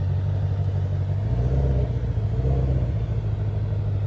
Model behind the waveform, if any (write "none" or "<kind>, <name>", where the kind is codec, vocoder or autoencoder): none